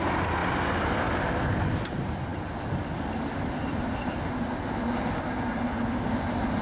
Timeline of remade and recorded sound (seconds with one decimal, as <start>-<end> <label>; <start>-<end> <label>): 0.0-0.4 remade; 0.4-1.8 recorded; 1.8-2.3 remade; 2.3-6.6 recorded